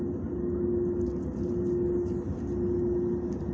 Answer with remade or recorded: recorded